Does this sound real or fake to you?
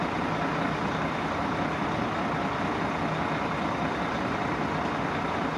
real